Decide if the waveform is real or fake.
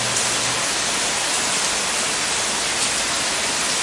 real